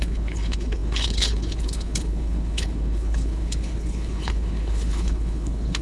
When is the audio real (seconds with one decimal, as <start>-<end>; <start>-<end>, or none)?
none